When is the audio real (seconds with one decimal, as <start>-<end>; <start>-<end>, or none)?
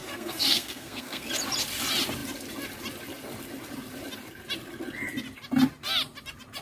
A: 1.3-6.6